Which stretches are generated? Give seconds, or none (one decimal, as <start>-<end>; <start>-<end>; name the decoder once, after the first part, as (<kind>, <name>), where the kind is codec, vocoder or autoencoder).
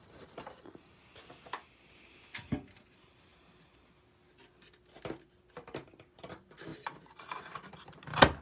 0.0-1.0 (vocoder, BigVGAN v2); 6.7-8.0